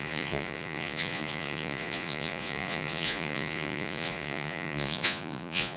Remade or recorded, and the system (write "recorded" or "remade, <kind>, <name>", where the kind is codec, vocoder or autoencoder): remade, vocoder, Vocos